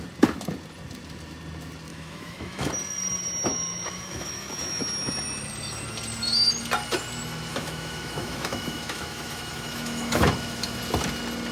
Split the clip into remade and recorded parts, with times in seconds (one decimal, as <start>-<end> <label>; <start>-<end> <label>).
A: 0.0-1.9 recorded; 1.9-2.7 remade; 2.7-3.5 recorded; 3.5-4.8 remade; 4.8-7.5 recorded; 7.5-10.8 remade; 10.8-11.5 recorded

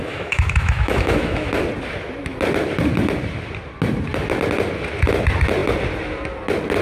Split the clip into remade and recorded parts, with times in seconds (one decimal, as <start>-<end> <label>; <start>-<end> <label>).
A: 0.0-1.5 remade; 1.5-6.8 recorded

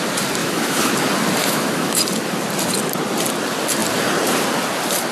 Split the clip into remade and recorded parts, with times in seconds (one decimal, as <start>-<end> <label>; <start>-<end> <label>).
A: 0.0-0.4 recorded; 0.4-0.9 remade; 0.9-1.4 recorded; 1.4-2.0 remade; 2.0-5.1 recorded

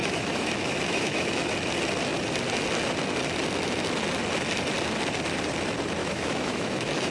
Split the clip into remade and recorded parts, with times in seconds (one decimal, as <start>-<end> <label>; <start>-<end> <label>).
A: 0.0-1.5 remade; 1.5-6.0 recorded; 6.0-7.1 remade

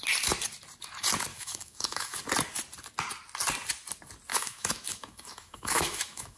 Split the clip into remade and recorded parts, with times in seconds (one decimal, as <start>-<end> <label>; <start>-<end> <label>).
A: 0.0-1.3 recorded; 1.3-2.2 remade; 2.2-4.3 recorded; 4.3-6.4 remade

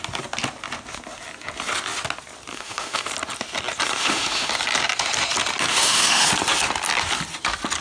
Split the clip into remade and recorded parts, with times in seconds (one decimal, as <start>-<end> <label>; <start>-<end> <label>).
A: 0.0-2.5 recorded; 2.5-3.1 remade; 3.1-4.0 recorded; 4.0-4.5 remade; 4.5-5.7 recorded; 5.7-6.3 remade; 6.3-7.8 recorded